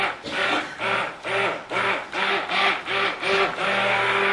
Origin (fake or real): real